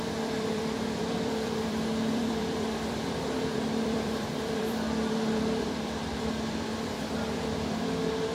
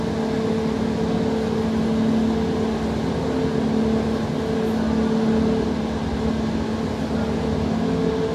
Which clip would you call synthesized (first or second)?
first